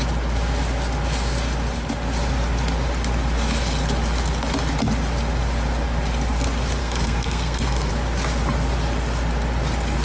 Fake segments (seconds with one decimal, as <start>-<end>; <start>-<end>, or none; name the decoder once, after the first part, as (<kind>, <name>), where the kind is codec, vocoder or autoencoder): 6.8-7.9 (codec, SNAC)